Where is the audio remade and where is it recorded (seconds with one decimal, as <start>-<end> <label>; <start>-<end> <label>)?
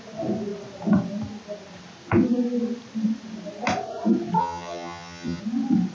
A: 0.0-4.4 recorded; 4.4-5.4 remade; 5.4-5.9 recorded